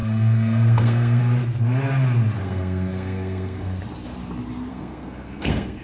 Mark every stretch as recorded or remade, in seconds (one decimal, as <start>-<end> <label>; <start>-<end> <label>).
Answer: 0.0-1.2 remade; 1.2-2.4 recorded; 2.4-3.8 remade; 3.8-4.7 recorded; 4.7-5.8 remade